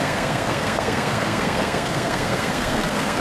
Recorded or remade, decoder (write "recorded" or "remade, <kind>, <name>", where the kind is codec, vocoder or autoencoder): remade, codec, SNAC